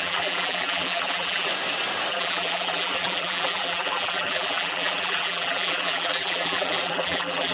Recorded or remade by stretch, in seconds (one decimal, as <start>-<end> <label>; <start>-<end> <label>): 0.0-1.5 remade; 1.5-2.1 recorded; 2.1-7.5 remade